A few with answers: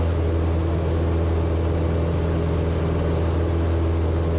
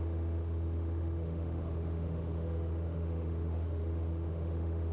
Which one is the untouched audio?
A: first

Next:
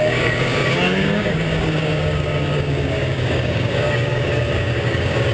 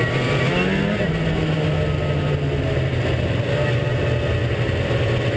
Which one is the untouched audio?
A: second